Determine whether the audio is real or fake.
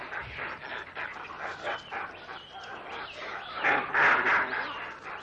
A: real